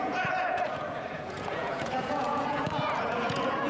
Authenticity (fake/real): fake